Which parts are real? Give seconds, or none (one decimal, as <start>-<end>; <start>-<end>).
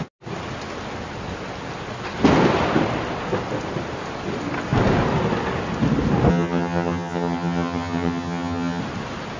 0.0-6.3; 8.8-9.4